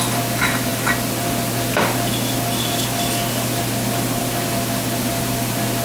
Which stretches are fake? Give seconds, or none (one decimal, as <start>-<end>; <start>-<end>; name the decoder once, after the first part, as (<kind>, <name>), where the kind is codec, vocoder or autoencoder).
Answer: none